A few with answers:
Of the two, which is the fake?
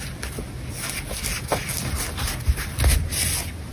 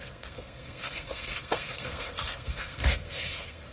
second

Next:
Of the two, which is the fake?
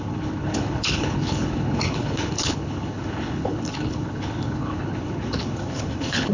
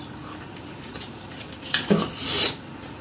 first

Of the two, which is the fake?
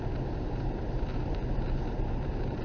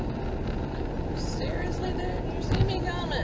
first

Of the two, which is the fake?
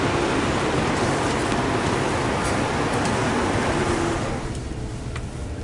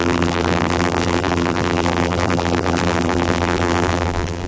second